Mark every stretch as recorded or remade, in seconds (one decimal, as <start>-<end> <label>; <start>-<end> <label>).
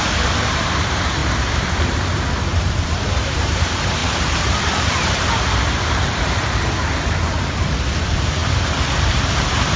0.0-4.0 remade; 4.0-7.7 recorded; 7.7-9.8 remade